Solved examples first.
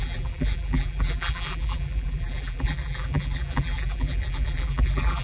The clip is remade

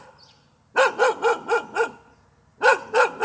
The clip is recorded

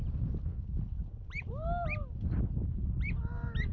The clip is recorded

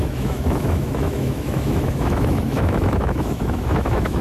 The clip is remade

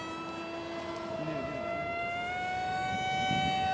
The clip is recorded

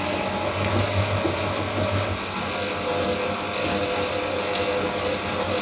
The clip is recorded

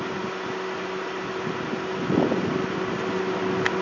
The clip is recorded